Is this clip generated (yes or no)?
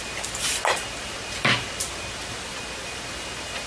no